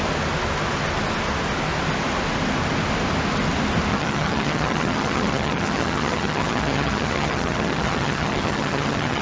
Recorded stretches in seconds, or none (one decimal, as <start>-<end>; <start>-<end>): 0.0-3.9